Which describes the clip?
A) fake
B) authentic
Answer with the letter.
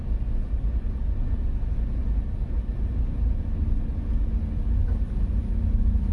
B